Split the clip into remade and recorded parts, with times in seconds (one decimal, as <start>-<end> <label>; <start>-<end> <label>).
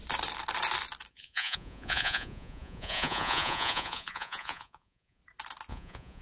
0.0-1.1 recorded; 1.1-5.2 remade; 5.2-5.7 recorded; 5.7-6.2 remade